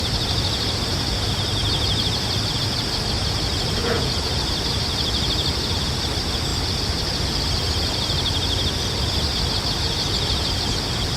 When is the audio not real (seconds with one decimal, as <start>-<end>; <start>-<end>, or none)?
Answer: 3.8-4.3